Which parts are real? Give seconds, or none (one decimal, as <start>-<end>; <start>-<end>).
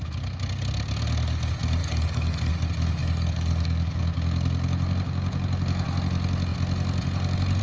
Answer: 0.0-1.8; 2.5-3.0; 4.0-7.6